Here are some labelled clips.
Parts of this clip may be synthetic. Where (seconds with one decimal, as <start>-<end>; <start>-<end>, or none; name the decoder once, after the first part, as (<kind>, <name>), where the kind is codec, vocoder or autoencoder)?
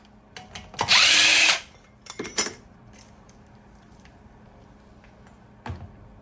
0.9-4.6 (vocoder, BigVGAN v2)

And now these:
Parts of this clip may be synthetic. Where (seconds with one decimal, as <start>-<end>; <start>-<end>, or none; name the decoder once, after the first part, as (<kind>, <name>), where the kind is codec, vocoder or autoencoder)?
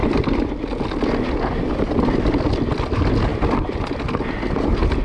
none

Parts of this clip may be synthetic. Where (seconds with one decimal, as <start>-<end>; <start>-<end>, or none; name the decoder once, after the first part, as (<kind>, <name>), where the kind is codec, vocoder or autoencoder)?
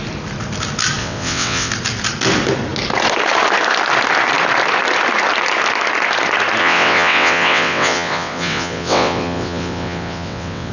1.0-1.7 (vocoder, WaveNeXt); 6.6-10.7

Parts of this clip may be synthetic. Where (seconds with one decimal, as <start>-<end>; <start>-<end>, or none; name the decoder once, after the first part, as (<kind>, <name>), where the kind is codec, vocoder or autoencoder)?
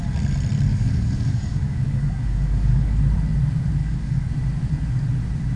0.7-3.0 (codec, DAC); 3.8-4.3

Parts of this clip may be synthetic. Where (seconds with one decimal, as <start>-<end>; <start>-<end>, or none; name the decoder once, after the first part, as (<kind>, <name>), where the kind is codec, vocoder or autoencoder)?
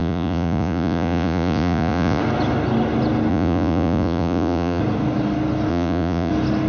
0.0-2.2 (vocoder, Vocos); 3.3-4.8; 5.7-6.3